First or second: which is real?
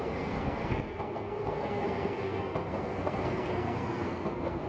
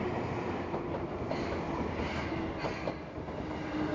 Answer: second